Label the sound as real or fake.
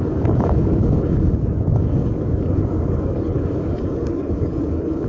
fake